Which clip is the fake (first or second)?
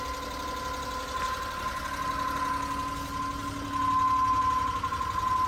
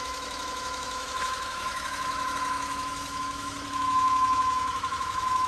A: second